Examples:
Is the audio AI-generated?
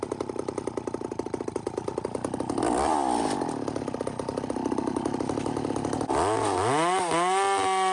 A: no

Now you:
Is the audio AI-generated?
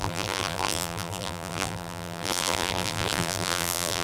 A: yes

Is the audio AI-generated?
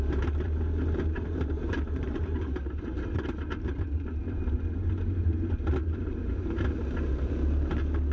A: yes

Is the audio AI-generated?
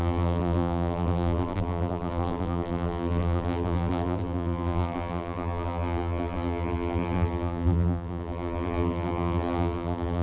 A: yes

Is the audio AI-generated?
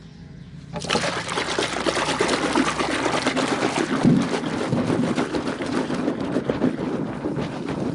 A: no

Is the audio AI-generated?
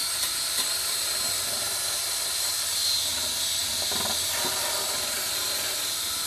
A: yes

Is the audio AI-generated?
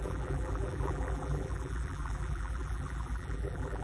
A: yes